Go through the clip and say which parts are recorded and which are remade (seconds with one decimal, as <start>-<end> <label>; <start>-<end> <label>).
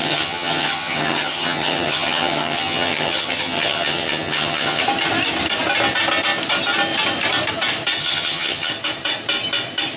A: 0.0-4.8 remade; 4.8-8.0 recorded; 8.0-8.7 remade; 8.7-10.0 recorded